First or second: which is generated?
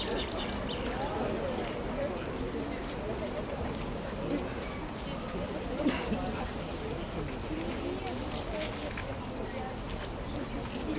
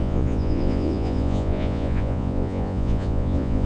second